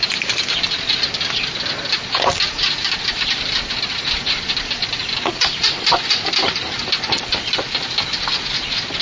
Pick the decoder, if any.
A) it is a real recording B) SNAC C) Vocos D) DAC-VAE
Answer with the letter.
A